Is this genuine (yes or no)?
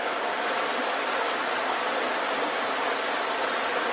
yes